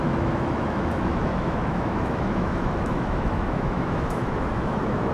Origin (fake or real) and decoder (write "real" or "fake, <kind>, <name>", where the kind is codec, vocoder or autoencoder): fake, autoencoder, DAC-VAE